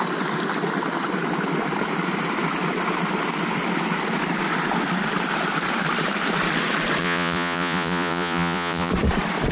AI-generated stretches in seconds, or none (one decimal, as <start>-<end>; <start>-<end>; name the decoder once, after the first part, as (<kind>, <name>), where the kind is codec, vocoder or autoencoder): 7.0-8.9 (vocoder, Vocos)